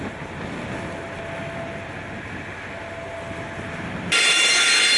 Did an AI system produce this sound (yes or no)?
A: no